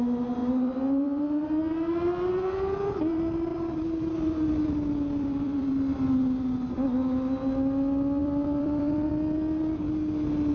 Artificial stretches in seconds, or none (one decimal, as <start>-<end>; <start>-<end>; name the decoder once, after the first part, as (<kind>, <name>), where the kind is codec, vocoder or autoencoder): 0.4-1.2 (vocoder, BigVGAN v2); 3.5-5.7; 8.2-9.1